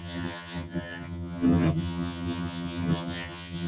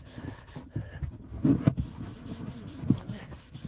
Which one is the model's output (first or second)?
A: first